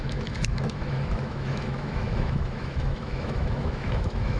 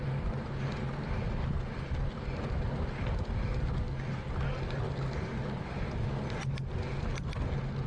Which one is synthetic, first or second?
first